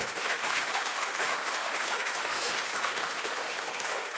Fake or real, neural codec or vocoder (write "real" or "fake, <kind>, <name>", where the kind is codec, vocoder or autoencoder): fake, autoencoder, DAC-VAE